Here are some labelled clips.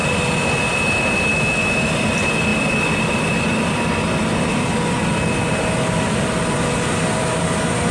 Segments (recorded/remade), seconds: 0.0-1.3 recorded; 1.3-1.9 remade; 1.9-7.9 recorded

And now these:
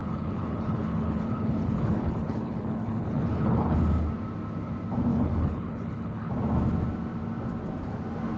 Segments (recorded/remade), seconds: 0.0-3.8 remade; 3.8-5.1 recorded; 5.1-6.3 remade; 6.3-8.4 recorded

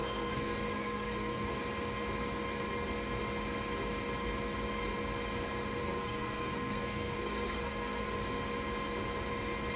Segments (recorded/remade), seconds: 0.0-1.5 remade; 1.5-5.8 recorded; 5.8-8.1 remade; 8.1-9.8 recorded

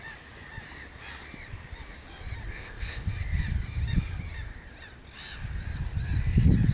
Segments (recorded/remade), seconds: 0.0-2.5 recorded; 2.5-3.1 remade; 3.1-6.7 recorded

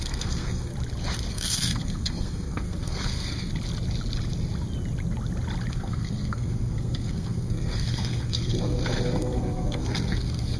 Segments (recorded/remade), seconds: 0.0-0.7 remade; 0.7-1.3 recorded; 1.3-3.5 remade; 3.5-5.7 recorded; 5.7-10.6 remade

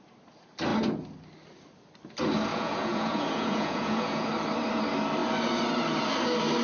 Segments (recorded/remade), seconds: 0.0-2.5 recorded; 2.5-4.3 remade; 4.3-6.6 recorded